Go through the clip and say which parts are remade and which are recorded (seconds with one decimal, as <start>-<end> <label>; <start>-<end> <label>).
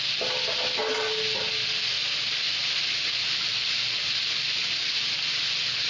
0.0-5.9 recorded